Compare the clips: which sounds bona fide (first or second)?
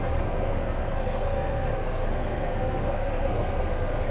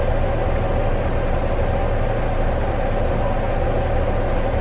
second